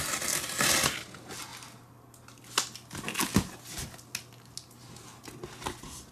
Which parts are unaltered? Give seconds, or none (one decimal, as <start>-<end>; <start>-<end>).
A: 0.0-6.1